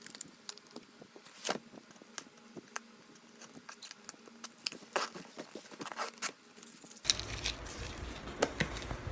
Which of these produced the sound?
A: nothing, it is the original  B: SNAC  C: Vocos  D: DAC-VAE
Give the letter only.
A